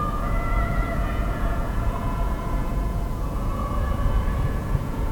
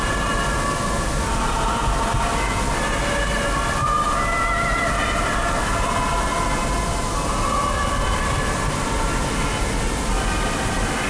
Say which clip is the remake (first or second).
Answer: first